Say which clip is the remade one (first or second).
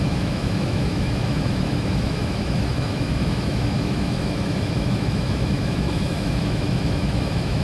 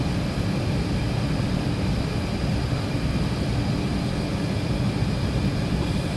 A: first